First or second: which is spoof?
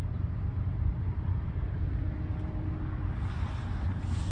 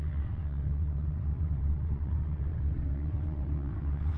second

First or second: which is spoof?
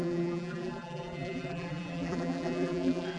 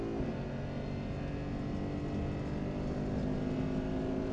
first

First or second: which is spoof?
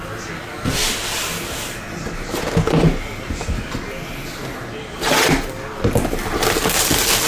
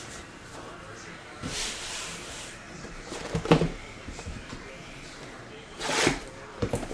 second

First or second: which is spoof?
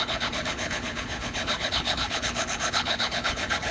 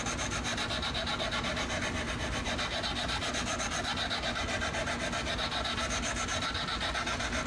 first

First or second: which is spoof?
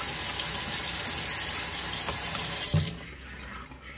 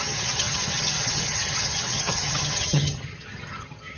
second